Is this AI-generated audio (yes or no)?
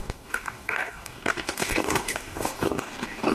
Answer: yes